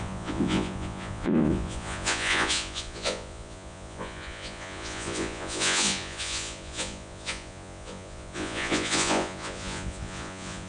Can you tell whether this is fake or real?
fake